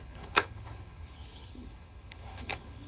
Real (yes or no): no